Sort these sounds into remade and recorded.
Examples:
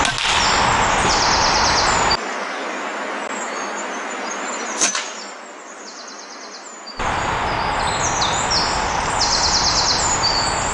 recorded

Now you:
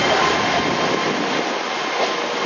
recorded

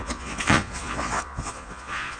remade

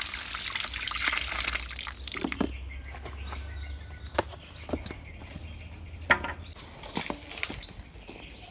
recorded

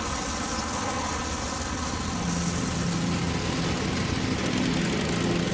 recorded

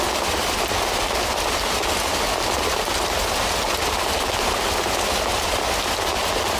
recorded